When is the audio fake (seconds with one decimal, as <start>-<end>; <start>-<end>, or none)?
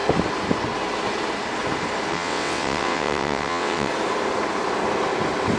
2.1-3.9